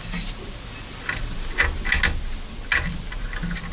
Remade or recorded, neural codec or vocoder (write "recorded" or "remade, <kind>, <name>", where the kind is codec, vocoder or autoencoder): recorded